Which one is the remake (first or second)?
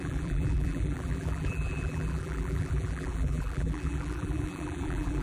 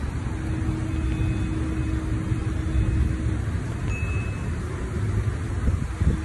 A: first